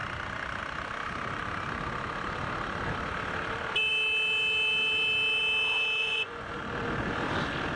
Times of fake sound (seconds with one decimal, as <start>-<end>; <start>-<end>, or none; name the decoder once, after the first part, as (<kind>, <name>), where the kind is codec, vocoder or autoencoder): 6.0-6.6 (vocoder, Vocos)